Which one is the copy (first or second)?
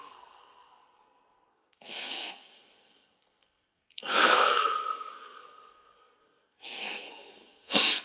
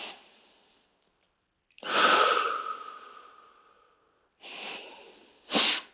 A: first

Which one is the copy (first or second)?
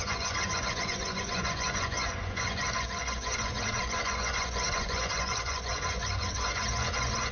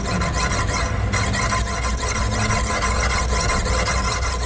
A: first